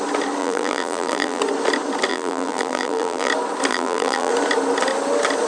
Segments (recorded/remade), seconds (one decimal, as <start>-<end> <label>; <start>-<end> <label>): 0.0-0.4 recorded; 0.4-1.4 remade; 1.4-2.1 recorded; 2.1-3.3 remade; 3.3-3.7 recorded; 3.7-4.3 remade; 4.3-5.5 recorded